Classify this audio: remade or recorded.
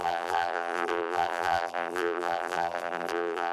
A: remade